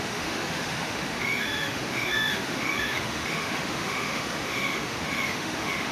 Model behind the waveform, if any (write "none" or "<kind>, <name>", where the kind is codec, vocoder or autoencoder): autoencoder, DAC-VAE